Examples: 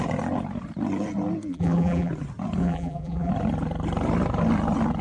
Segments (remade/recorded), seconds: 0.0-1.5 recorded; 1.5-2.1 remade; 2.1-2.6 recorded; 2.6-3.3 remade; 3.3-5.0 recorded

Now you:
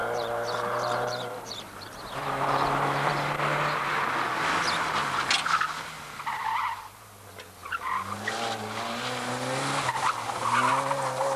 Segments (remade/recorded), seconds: 0.0-3.1 remade; 3.1-11.4 recorded

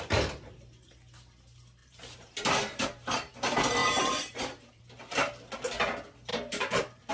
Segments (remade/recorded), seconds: 0.0-1.8 recorded; 1.8-3.3 remade; 3.3-3.8 recorded; 3.8-4.8 remade; 4.8-6.3 recorded; 6.3-7.1 remade

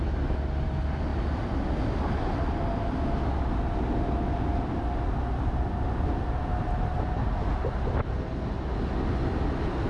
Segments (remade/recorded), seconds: 0.0-9.9 recorded

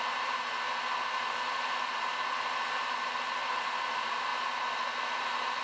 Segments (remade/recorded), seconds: 0.0-4.3 remade; 4.3-5.6 recorded

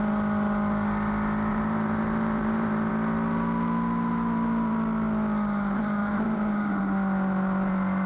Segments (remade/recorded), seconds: 0.0-1.5 recorded; 1.5-2.9 remade; 2.9-6.0 recorded; 6.0-6.8 remade; 6.8-8.1 recorded